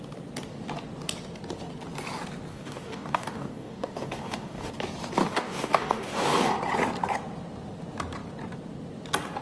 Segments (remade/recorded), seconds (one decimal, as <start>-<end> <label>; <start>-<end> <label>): 0.0-2.5 recorded; 2.5-4.7 remade; 4.7-5.2 recorded; 5.2-6.5 remade; 6.5-9.4 recorded